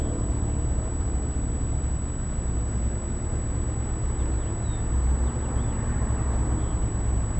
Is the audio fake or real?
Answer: real